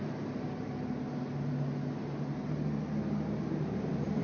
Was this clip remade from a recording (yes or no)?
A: no